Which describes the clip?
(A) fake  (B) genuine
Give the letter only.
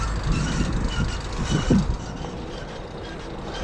B